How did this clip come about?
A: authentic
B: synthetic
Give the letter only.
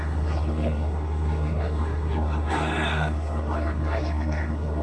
B